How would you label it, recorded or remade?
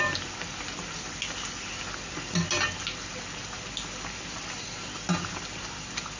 recorded